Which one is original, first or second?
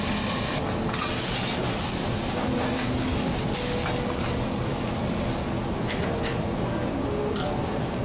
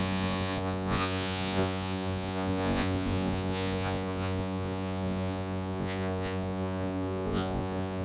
first